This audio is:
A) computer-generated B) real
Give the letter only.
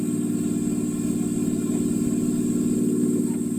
B